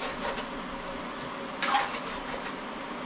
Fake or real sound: real